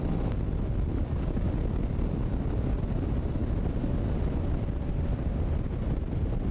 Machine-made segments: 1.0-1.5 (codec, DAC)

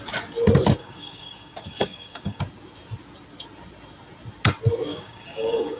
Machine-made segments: 0.8-2.4 (codec, DAC); 4.9-5.8

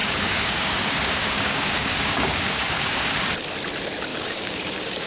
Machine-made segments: 0.0-3.1 (codec, DAC); 4.1-5.1

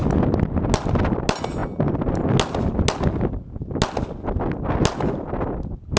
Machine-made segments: none

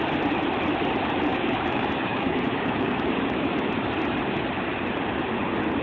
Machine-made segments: 1.3-3.6 (codec, DAC)